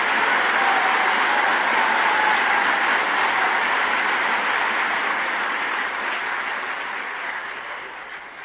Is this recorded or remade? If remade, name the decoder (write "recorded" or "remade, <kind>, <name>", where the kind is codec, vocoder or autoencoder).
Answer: recorded